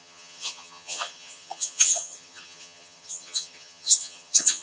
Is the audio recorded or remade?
remade